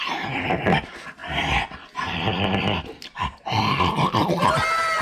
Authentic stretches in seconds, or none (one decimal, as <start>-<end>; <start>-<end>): 0.0-5.0